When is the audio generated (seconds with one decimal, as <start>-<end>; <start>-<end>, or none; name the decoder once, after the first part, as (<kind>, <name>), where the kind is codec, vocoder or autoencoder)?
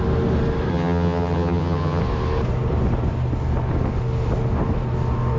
0.7-2.0 (vocoder, HiFi-GAN)